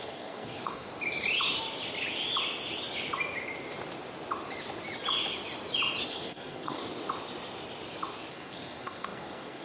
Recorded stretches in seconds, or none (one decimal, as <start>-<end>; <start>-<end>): 0.9-6.1; 6.8-8.3